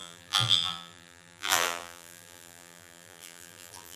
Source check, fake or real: fake